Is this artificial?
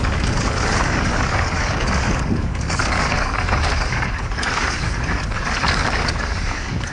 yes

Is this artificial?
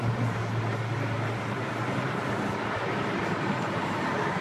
no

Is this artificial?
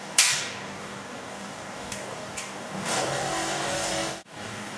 yes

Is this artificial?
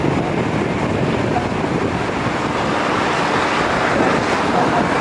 no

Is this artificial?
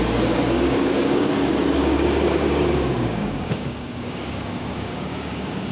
yes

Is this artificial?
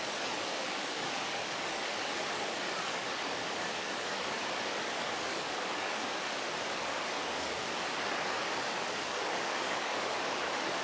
yes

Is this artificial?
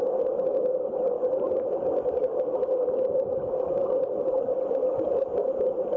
no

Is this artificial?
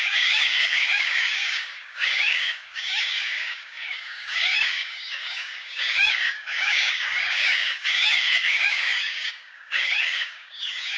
yes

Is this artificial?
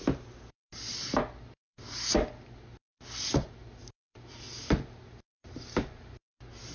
no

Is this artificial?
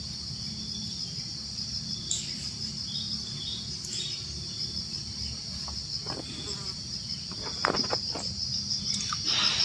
no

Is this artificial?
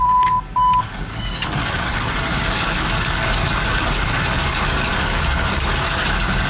yes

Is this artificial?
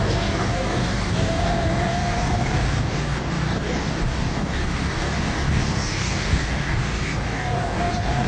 yes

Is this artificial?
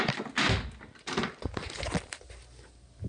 no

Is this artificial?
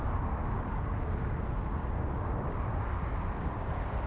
yes